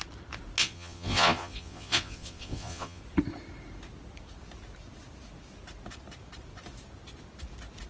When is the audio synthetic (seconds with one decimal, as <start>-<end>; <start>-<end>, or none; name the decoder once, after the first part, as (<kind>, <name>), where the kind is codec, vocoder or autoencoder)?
0.6-3.0 (vocoder, Vocos)